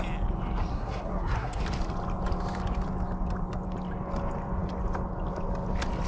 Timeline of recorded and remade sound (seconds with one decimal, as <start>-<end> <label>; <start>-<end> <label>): 0.0-0.7 recorded; 0.7-1.6 remade; 1.6-6.1 recorded